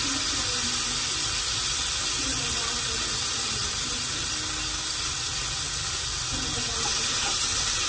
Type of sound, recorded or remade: recorded